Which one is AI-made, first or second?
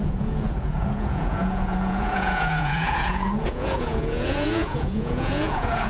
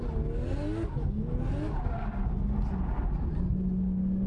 first